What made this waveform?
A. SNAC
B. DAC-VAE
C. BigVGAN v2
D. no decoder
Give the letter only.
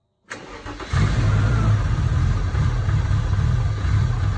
D